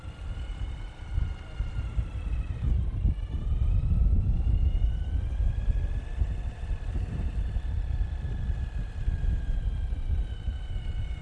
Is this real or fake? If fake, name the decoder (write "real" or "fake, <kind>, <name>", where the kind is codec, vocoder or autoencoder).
real